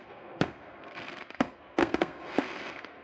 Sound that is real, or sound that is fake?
fake